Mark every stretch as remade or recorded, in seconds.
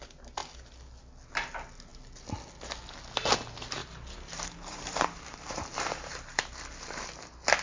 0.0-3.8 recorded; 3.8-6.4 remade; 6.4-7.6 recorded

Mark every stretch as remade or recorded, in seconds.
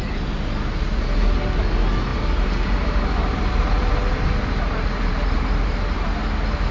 0.0-2.1 recorded; 2.1-6.1 remade; 6.1-6.7 recorded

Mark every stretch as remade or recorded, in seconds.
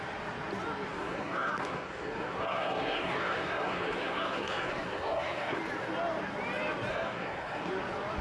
0.0-0.9 recorded; 0.9-5.6 remade; 5.6-6.9 recorded; 6.9-7.7 remade; 7.7-8.2 recorded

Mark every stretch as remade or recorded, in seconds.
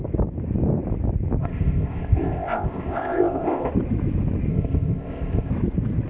0.0-1.4 recorded; 1.4-3.7 remade; 3.7-4.5 recorded; 4.5-5.5 remade; 5.5-6.1 recorded